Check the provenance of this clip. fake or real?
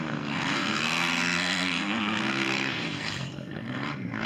fake